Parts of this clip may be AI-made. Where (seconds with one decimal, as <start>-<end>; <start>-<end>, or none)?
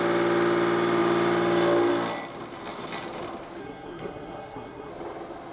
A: 3.6-4.9